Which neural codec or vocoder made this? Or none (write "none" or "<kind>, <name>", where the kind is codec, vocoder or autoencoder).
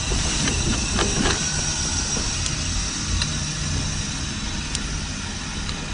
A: none